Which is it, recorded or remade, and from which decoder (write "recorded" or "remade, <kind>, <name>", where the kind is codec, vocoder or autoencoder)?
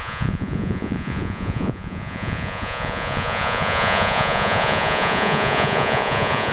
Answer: remade, vocoder, Vocos